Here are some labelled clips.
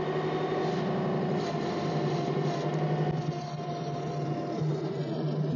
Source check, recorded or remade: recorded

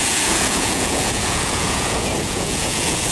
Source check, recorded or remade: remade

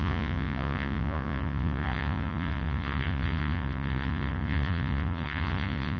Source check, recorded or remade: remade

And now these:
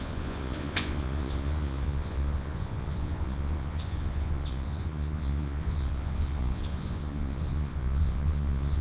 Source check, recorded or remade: remade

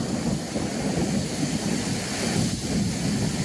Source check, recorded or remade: recorded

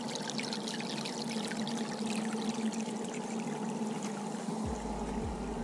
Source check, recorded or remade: recorded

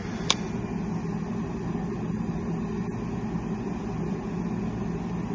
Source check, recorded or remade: recorded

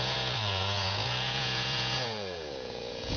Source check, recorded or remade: remade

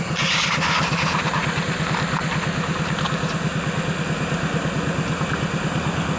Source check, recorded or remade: recorded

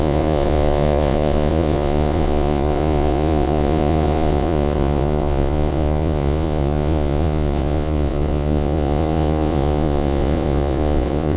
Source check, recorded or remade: remade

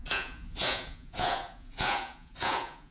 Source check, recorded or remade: remade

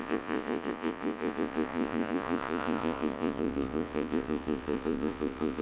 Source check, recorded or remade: remade